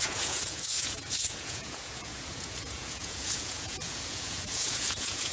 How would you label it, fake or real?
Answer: fake